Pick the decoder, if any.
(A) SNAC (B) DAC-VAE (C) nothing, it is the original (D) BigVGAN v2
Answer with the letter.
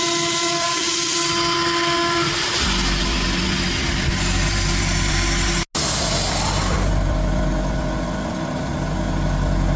C